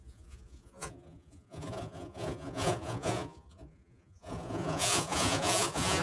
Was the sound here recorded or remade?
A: remade